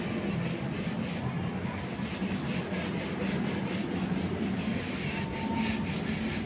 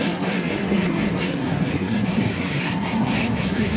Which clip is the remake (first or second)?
second